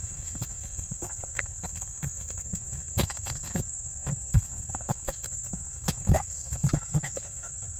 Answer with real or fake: fake